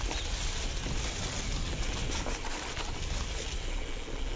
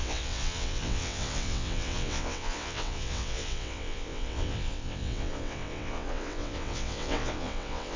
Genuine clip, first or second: first